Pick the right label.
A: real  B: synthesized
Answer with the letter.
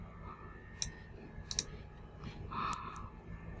A